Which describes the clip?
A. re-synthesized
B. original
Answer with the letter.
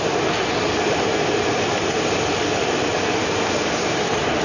A